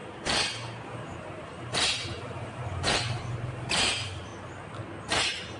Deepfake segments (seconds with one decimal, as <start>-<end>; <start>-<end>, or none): 0.0-4.3; 5.0-5.6